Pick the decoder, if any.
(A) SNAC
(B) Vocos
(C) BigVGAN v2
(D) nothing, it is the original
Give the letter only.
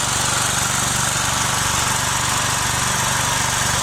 D